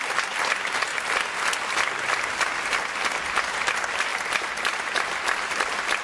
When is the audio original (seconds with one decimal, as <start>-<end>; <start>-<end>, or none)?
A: 0.0-6.0